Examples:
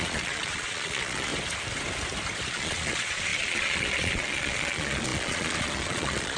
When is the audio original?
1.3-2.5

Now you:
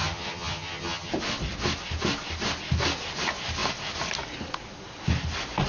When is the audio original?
1.1-5.7

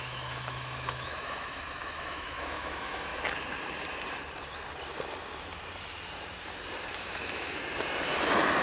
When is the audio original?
3.1-6.9; 7.6-8.6

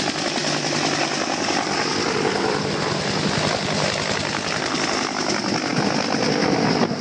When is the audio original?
0.0-7.0